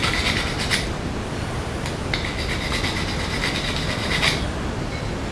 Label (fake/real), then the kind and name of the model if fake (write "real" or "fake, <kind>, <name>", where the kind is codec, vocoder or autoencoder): real